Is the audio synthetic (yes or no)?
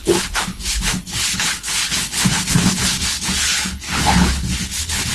yes